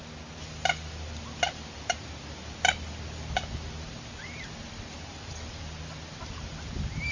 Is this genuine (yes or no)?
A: yes